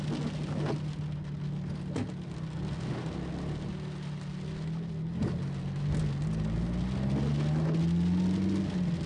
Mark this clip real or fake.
real